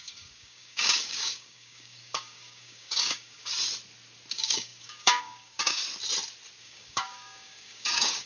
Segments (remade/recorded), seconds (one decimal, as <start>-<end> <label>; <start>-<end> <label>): 0.0-3.5 remade; 3.5-4.3 recorded; 4.3-5.8 remade; 5.8-6.6 recorded; 6.6-8.3 remade